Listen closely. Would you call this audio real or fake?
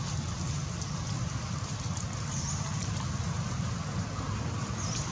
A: real